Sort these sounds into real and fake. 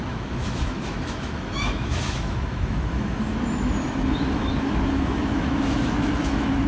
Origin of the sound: fake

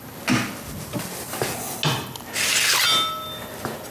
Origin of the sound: real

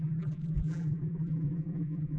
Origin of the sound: fake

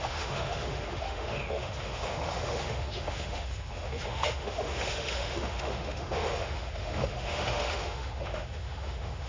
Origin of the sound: fake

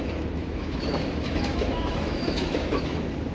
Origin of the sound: fake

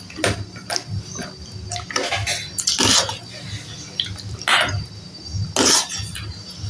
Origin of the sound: real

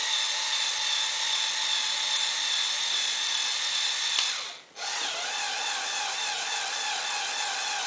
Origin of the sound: real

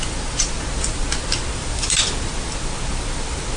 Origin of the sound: real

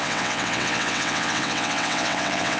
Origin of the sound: fake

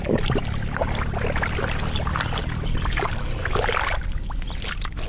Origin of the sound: real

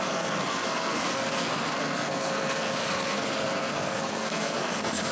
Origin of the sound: fake